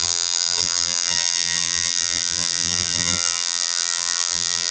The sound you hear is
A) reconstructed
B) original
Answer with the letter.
A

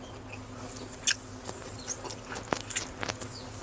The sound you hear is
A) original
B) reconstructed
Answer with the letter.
A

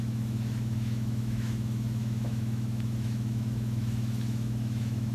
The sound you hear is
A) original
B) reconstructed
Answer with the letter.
B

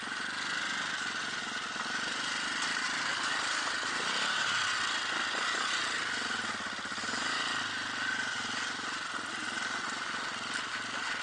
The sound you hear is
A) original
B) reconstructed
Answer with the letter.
A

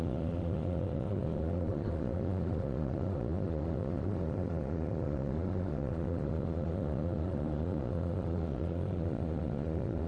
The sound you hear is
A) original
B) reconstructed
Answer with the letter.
B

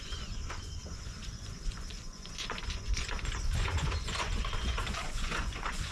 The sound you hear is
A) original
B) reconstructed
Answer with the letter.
B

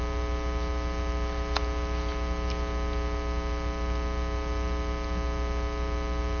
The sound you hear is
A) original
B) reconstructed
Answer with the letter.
A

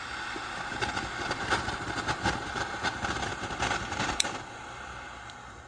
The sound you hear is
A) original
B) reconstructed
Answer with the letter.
B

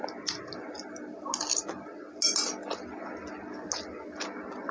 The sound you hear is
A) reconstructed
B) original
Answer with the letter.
B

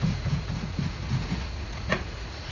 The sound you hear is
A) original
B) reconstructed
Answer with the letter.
B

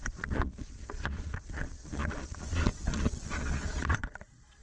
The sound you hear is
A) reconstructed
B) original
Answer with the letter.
A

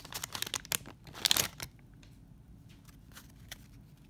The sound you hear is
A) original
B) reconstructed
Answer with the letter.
A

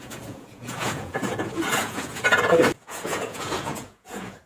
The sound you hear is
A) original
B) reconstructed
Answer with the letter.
B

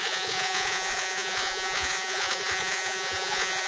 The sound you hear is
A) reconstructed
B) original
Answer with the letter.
A